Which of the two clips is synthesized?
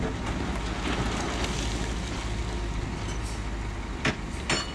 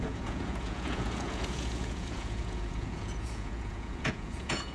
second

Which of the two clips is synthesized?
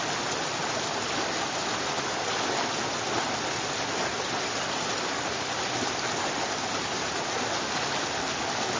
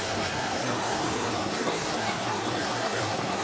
second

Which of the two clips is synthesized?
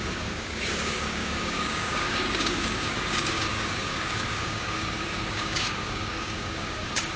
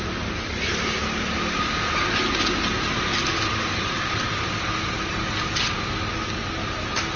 first